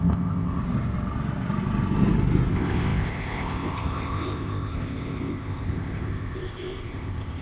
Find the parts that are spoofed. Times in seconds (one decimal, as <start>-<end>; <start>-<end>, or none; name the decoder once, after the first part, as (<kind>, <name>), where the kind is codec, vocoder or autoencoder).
0.0-0.6 (codec, ZipCodec); 2.5-7.4